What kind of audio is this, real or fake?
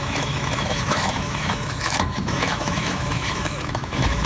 fake